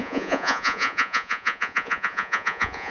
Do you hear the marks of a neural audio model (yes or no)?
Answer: yes